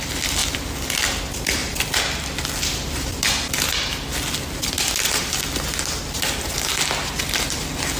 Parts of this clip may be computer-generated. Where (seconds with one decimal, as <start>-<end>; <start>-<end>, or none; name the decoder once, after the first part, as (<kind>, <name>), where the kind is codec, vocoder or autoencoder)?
none